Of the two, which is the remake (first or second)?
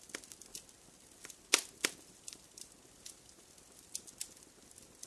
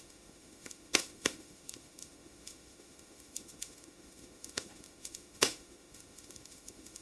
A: second